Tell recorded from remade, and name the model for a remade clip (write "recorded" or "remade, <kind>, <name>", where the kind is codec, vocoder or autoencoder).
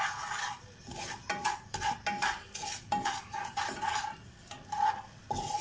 recorded